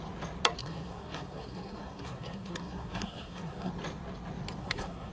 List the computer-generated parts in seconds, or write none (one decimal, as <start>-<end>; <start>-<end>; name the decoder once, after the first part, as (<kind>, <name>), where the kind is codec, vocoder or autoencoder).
0.6-3.7 (codec, SNAC); 4.6-5.1